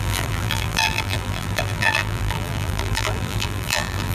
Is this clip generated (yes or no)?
yes